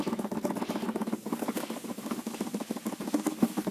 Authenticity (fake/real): fake